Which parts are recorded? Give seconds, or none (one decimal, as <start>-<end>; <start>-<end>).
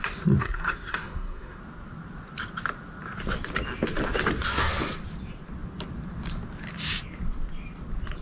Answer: 0.0-0.4; 1.6-8.2